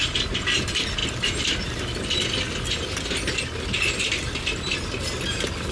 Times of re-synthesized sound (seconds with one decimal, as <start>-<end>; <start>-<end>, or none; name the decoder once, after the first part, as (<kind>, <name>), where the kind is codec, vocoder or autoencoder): none